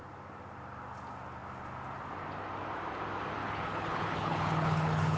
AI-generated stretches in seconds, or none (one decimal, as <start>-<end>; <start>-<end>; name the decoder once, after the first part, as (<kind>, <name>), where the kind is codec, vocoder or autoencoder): 3.4-5.2 (codec, HILCodec)